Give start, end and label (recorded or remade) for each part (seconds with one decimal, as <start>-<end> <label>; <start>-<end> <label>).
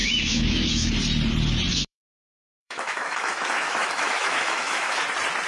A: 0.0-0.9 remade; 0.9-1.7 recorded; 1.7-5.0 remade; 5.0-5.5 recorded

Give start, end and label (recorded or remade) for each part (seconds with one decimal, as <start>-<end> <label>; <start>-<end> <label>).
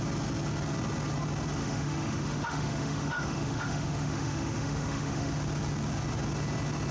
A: 0.0-1.6 recorded; 1.6-5.3 remade; 5.3-6.9 recorded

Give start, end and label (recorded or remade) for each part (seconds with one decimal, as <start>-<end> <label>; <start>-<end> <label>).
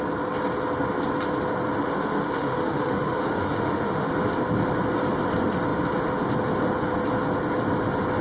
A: 0.0-1.8 recorded; 1.8-4.1 remade; 4.1-8.2 recorded